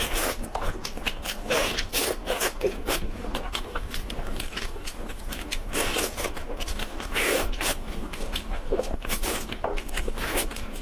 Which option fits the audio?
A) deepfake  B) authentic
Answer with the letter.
A